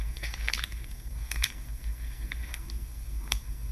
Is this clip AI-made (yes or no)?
yes